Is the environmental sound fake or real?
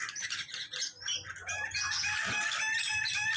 real